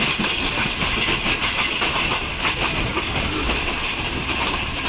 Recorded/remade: recorded